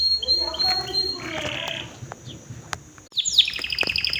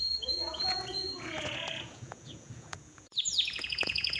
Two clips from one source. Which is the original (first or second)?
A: first